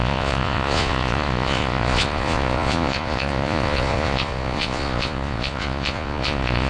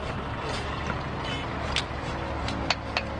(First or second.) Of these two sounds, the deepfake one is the first